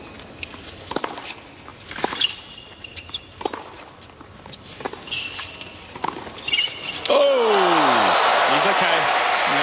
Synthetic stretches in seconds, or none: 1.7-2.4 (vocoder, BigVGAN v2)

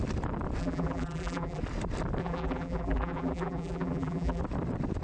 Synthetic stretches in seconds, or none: 0.6-1.6 (vocoder, BigVGAN v2); 2.2-4.4

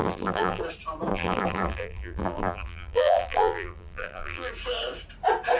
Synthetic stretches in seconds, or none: 0.0-0.6 (vocoder, BigVGAN v2); 1.1-4.5

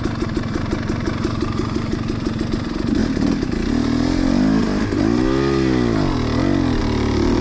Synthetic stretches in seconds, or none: 0.0-3.0 (vocoder, BigVGAN v2); 6.8-7.4

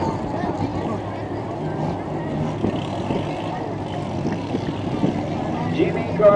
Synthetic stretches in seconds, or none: none

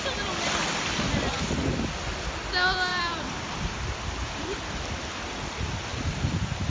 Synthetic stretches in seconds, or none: 2.9-4.7 (vocoder, BigVGAN v2)

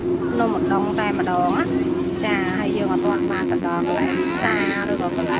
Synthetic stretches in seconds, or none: 3.0-5.4 (vocoder, BigVGAN v2)